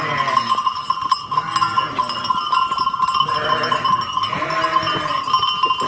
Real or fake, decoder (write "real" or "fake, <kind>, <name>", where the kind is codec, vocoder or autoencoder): real